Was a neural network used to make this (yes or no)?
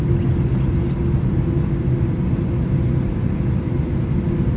no